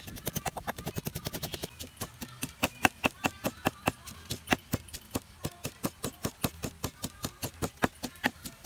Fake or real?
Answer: real